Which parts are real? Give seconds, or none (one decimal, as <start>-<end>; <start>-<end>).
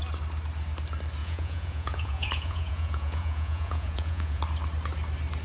0.0-1.2; 4.4-5.4